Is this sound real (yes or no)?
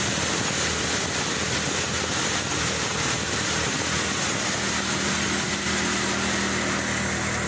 yes